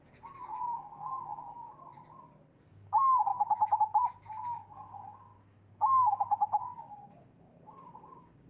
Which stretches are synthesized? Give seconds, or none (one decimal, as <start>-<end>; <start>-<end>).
0.0-0.9; 2.5-8.5